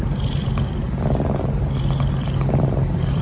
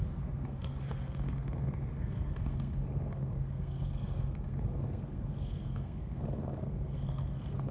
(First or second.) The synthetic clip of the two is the second